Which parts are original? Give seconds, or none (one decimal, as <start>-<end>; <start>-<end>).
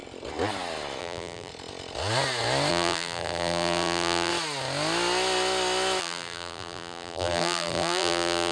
0.0-1.0; 1.5-2.7; 4.3-6.0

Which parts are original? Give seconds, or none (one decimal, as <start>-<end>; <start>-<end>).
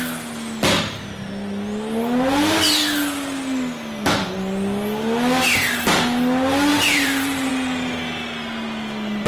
0.0-6.7; 7.5-9.3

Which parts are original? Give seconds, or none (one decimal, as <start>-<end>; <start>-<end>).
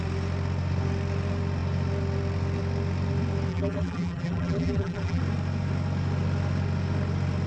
0.0-3.5; 5.2-7.5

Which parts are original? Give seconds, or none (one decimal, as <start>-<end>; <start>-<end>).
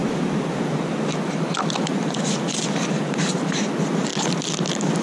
0.0-5.0